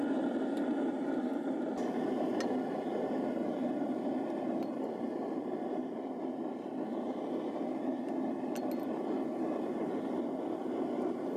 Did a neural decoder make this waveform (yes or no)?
no